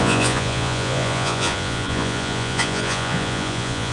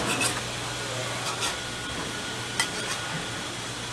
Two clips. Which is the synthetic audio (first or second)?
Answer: first